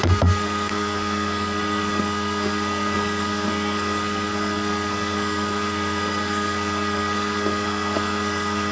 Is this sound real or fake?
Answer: fake